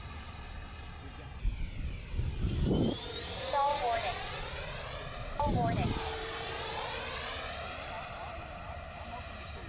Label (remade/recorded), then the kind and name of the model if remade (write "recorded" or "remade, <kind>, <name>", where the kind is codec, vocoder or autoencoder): remade, vocoder, BigVGAN v2